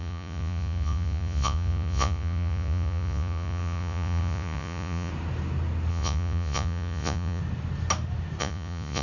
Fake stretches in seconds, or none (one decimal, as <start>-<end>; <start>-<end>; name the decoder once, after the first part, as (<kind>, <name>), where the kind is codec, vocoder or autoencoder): 0.0-5.1 (vocoder, Vocos); 5.9-7.4; 8.4-9.0